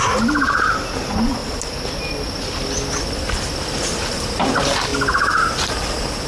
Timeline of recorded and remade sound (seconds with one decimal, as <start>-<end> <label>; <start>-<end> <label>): 0.0-6.3 recorded